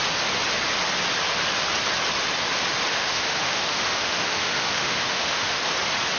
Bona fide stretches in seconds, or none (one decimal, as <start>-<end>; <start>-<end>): 0.0-2.9; 5.6-6.2